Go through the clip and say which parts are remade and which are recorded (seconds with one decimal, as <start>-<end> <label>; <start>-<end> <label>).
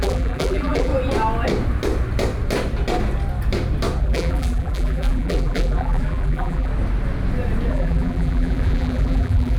0.0-0.9 remade; 0.9-4.0 recorded; 4.0-6.7 remade; 6.7-7.7 recorded; 7.7-9.6 remade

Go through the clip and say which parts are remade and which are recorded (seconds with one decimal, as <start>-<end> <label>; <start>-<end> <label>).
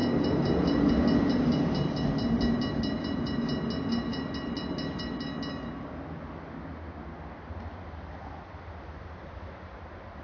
0.0-0.9 remade; 0.9-10.2 recorded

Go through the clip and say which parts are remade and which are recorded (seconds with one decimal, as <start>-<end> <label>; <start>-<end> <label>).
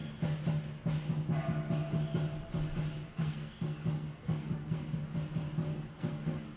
0.0-3.1 recorded; 3.1-5.0 remade; 5.0-5.7 recorded; 5.7-6.6 remade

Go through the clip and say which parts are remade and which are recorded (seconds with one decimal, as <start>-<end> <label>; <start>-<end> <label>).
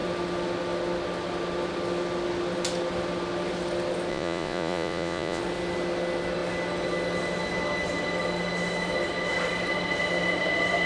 0.0-4.1 recorded; 4.1-5.4 remade; 5.4-10.9 recorded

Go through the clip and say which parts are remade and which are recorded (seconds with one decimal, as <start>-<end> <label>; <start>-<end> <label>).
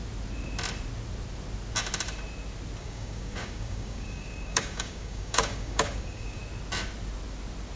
0.0-2.8 recorded; 2.8-6.4 remade; 6.4-7.8 recorded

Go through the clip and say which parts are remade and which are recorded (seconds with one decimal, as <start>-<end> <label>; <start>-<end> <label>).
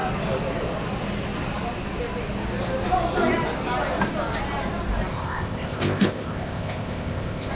0.0-5.1 recorded; 5.1-7.5 remade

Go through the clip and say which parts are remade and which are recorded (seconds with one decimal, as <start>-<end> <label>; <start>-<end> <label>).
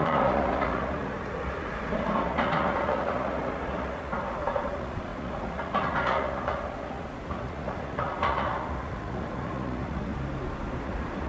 0.0-10.1 remade; 10.1-10.8 recorded; 10.8-11.3 remade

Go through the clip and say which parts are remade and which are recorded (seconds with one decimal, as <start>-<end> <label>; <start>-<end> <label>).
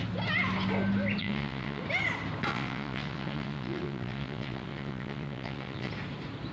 0.0-1.2 recorded; 1.2-1.8 remade; 1.8-2.5 recorded; 2.5-5.9 remade; 5.9-6.5 recorded